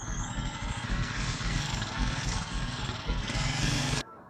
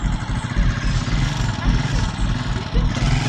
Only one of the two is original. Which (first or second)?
second